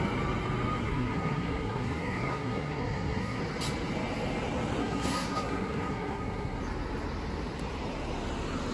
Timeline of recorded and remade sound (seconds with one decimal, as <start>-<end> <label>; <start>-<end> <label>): 0.0-0.8 recorded; 0.8-3.4 remade; 3.4-4.8 recorded; 4.8-6.6 remade; 6.6-8.7 recorded